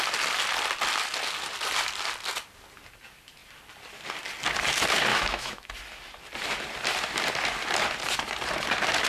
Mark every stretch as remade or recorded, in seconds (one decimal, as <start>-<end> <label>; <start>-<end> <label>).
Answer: 0.0-5.1 recorded; 5.1-5.7 remade; 5.7-9.1 recorded